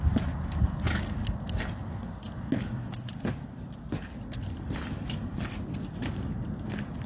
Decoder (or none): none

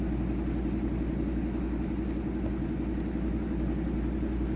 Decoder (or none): none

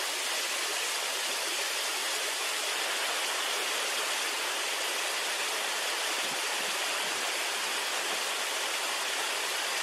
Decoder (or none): none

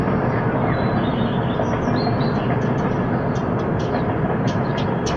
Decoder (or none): none